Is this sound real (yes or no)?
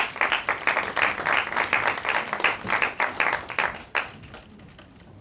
yes